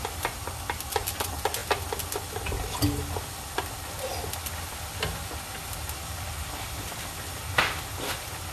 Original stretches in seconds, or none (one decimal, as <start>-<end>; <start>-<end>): 0.0-8.5